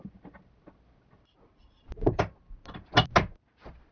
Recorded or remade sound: recorded